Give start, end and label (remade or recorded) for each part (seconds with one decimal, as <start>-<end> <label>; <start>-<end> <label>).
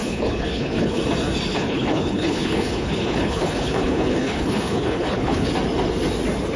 0.0-1.0 remade; 1.0-1.5 recorded; 1.5-5.5 remade; 5.5-6.6 recorded